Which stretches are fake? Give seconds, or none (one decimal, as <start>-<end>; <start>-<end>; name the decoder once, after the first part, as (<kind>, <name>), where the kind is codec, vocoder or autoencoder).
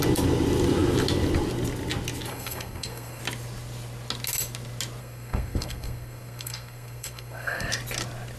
2.3-3.2 (codec, SNAC); 5.0-7.7